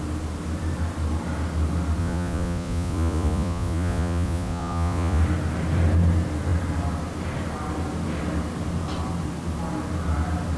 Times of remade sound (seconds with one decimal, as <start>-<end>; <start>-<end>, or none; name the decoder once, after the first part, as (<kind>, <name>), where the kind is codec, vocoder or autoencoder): 2.0-5.2 (vocoder, Vocos)